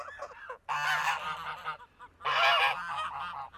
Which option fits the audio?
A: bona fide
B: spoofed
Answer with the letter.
A